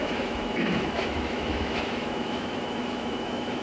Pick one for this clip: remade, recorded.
remade